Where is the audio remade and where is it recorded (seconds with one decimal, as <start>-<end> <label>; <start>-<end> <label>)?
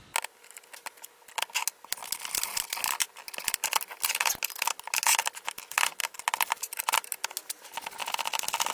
0.0-8.7 recorded